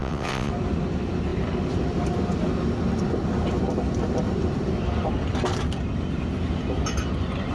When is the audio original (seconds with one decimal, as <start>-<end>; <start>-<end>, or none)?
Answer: 0.5-7.5

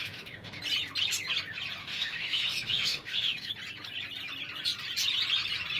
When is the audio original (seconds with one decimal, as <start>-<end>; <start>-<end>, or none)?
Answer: 0.6-1.8; 3.5-5.8

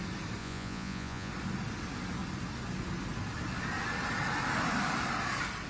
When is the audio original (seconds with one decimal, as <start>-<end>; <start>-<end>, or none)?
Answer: 0.0-0.4; 1.3-5.7

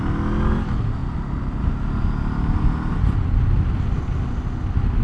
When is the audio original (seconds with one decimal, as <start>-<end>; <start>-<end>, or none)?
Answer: 0.0-5.0